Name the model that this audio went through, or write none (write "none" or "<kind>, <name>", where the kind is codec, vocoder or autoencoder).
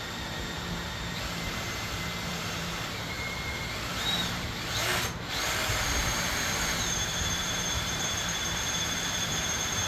vocoder, BigVGAN v2